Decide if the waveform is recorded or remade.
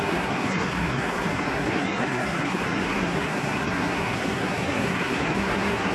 remade